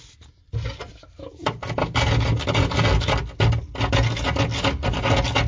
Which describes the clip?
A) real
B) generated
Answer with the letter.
A